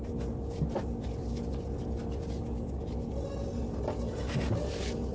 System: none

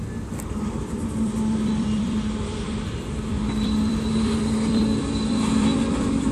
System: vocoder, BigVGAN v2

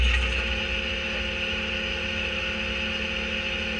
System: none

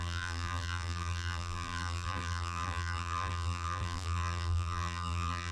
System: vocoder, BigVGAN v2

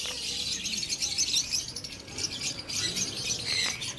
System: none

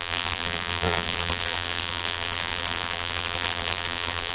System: vocoder, BigVGAN v2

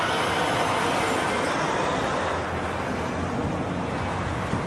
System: none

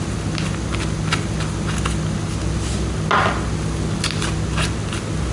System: none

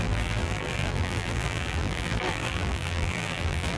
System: vocoder, BigVGAN v2